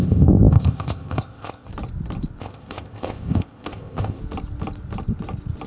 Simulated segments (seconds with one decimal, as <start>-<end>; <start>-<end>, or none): 0.0-1.7; 2.4-4.2